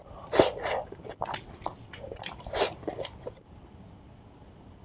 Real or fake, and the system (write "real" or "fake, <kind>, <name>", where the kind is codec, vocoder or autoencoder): real